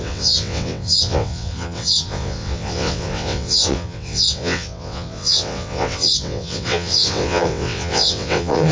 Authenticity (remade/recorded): remade